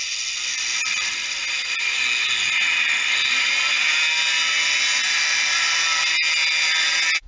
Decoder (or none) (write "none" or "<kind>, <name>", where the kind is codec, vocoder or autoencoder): none